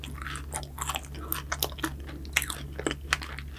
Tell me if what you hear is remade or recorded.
recorded